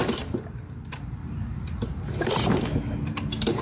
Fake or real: fake